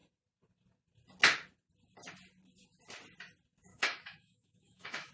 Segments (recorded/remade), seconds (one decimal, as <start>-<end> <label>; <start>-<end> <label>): 0.0-3.7 recorded; 3.7-5.1 remade